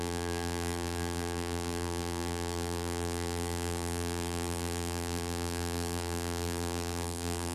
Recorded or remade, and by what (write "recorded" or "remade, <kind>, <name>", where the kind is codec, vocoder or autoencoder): remade, vocoder, BigVGAN v2